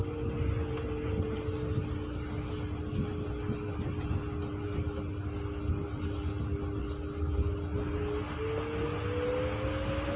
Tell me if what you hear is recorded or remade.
recorded